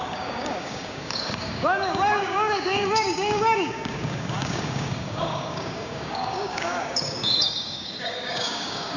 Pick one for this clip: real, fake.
fake